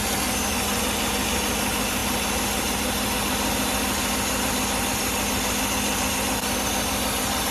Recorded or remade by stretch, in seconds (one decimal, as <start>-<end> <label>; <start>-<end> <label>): 0.0-7.5 recorded